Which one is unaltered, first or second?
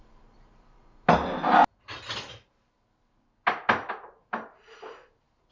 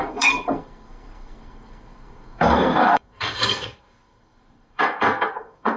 first